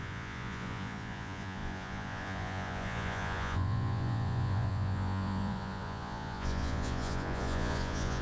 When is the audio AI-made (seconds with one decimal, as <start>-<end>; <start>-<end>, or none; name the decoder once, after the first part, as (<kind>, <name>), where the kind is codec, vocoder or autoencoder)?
0.0-8.2 (vocoder, Vocos)